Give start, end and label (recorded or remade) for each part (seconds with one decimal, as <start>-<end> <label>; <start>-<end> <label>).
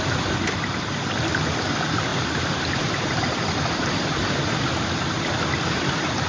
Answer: 0.0-2.1 recorded; 2.1-4.9 remade; 4.9-6.3 recorded